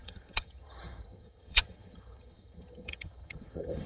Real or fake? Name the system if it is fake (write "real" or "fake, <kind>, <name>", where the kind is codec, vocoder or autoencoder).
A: fake, vocoder, HiFi-GAN